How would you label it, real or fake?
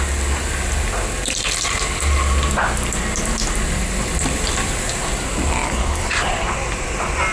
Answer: real